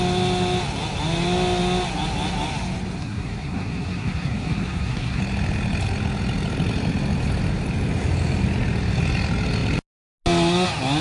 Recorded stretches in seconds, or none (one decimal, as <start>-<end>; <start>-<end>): 0.0-3.0; 5.2-11.0

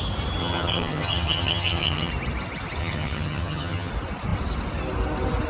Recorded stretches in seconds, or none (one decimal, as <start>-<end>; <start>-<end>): 0.0-0.4; 2.1-2.8; 3.9-5.5